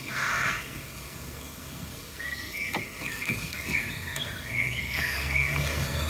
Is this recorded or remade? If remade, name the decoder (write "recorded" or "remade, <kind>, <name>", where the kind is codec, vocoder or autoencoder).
remade, codec, SNAC